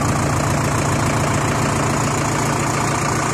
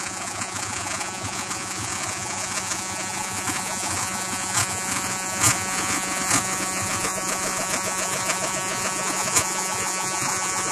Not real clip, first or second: second